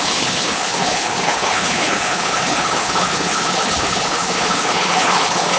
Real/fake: fake